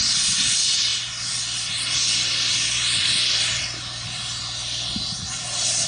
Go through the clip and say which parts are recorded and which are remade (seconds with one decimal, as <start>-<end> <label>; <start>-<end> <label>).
0.0-5.9 recorded